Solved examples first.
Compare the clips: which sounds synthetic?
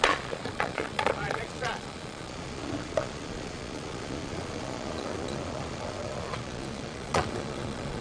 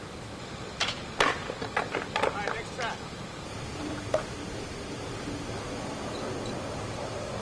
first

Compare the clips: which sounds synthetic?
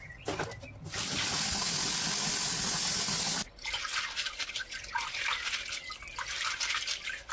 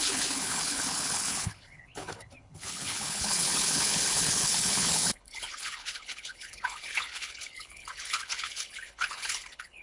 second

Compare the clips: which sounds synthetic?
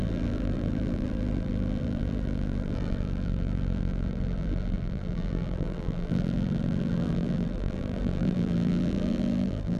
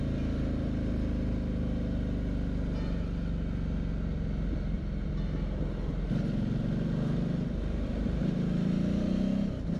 first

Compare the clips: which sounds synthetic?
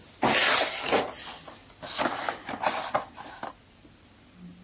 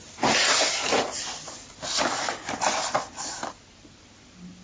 second